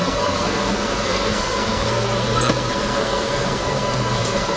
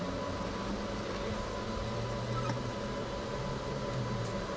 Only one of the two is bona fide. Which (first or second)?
second